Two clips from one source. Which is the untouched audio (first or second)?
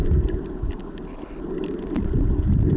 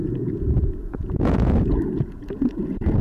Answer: first